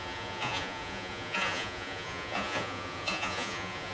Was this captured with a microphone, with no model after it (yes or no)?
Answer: no